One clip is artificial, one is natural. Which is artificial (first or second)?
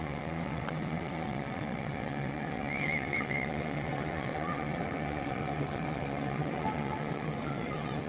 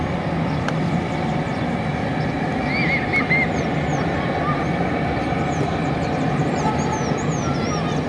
first